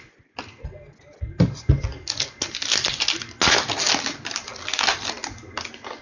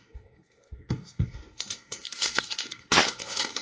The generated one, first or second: second